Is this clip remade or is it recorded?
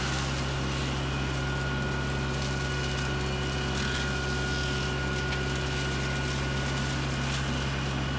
recorded